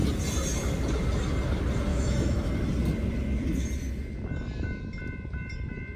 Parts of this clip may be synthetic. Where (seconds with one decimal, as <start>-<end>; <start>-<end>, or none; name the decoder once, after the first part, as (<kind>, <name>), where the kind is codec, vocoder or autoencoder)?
1.9-2.5 (autoencoder, DAC-VAE)